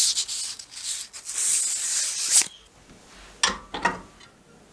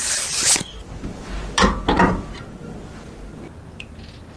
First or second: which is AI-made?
second